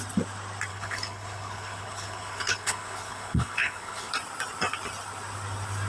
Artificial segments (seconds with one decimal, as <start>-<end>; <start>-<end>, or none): 0.7-4.1

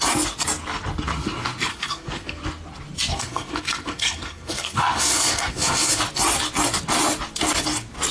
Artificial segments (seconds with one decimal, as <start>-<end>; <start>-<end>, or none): 1.7-2.4; 3.1-6.0

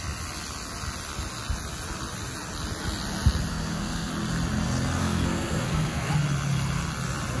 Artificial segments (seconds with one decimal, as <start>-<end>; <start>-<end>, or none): 3.5-4.1; 5.0-6.1

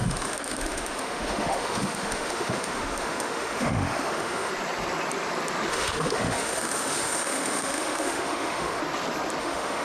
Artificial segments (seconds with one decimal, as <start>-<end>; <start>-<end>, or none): 0.0-4.5; 5.7-8.8; 9.4-9.8